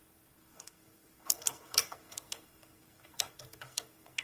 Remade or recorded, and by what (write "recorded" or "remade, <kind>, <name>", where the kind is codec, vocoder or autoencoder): remade, codec, SNAC